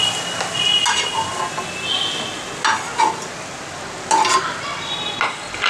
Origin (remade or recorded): recorded